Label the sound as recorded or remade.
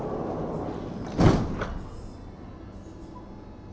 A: recorded